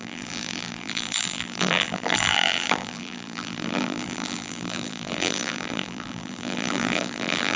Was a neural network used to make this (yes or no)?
yes